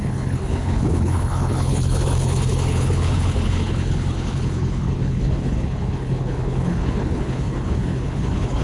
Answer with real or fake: fake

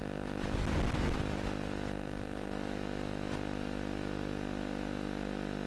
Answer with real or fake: real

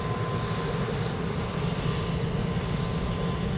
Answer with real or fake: real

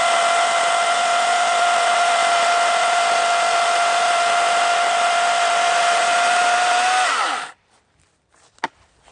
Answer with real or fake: real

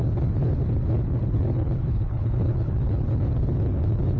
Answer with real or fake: fake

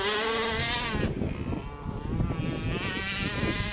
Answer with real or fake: real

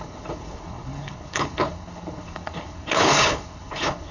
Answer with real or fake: fake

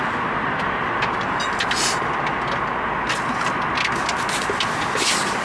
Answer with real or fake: real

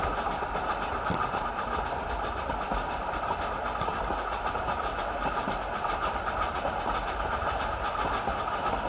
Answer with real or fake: real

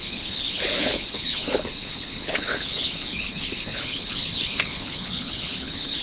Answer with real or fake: fake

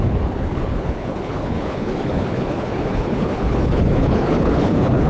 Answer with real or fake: fake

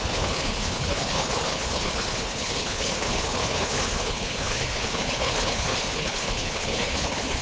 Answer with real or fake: fake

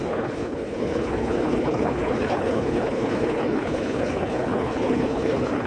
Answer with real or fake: fake